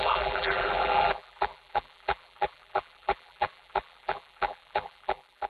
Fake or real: fake